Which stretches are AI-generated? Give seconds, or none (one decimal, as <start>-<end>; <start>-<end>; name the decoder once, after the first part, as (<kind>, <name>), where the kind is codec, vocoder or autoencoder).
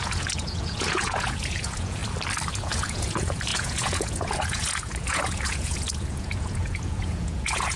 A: 0.0-2.0 (vocoder, Vocos); 2.5-7.8